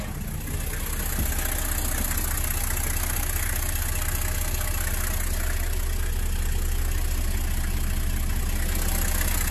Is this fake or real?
real